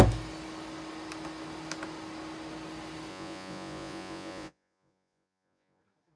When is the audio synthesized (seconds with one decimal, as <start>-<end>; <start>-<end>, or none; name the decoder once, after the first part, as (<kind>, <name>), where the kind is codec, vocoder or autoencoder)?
3.1-5.8 (vocoder, Vocos)